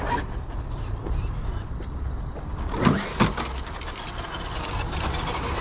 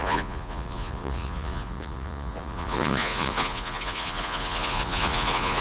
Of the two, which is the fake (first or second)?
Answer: second